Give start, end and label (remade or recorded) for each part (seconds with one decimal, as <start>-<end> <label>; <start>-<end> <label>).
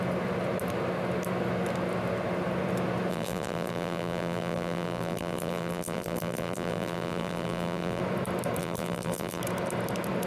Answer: 0.0-3.1 recorded; 3.1-8.0 remade; 8.0-8.6 recorded; 8.6-9.4 remade; 9.4-10.3 recorded